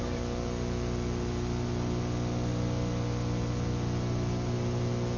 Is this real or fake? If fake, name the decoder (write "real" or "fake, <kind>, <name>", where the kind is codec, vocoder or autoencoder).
real